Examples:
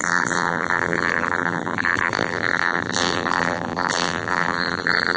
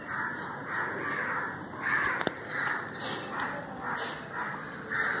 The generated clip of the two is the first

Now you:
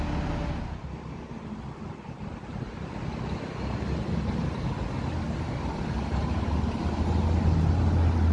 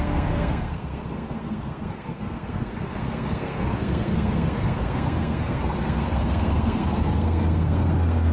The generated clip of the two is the second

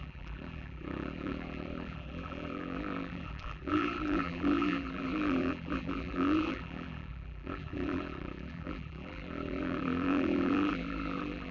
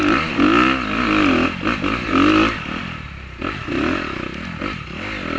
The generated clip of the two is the first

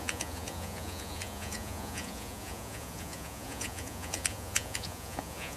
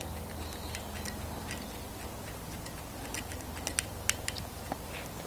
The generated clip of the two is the first